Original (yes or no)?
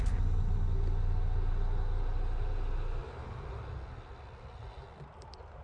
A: yes